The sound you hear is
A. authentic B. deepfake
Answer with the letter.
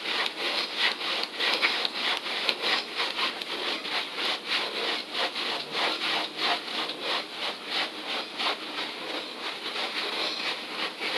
A